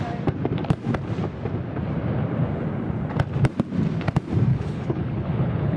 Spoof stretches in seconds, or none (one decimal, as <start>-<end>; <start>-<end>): 4.5-5.8